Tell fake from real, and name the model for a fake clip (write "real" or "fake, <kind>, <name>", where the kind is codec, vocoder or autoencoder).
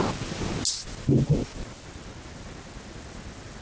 real